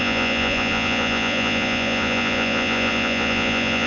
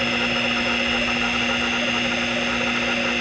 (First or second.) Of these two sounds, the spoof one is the first